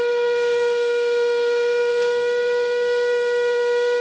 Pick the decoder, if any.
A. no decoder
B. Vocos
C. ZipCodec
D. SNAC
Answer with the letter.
D